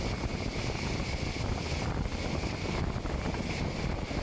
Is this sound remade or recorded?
recorded